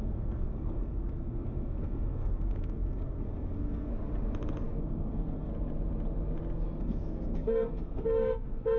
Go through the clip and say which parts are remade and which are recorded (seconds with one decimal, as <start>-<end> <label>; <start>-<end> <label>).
0.0-3.9 remade; 3.9-4.8 recorded; 4.8-5.5 remade; 5.5-6.8 recorded; 6.8-8.8 remade